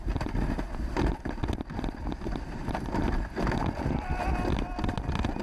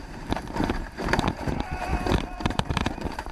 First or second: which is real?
first